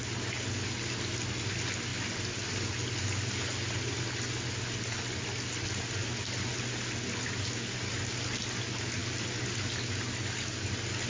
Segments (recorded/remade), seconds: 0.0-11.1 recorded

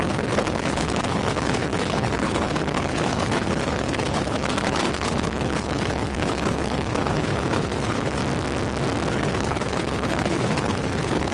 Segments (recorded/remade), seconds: 0.0-8.2 remade; 8.2-9.1 recorded; 9.1-11.3 remade

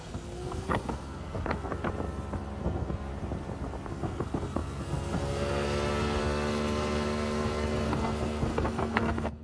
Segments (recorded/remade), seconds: 0.0-1.7 remade; 1.7-2.6 recorded; 2.6-3.1 remade; 3.1-3.9 recorded; 3.9-9.4 remade